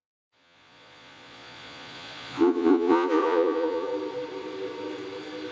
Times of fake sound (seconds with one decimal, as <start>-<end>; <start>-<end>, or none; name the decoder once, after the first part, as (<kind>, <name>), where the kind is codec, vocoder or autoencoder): 0.0-3.9 (vocoder, Vocos)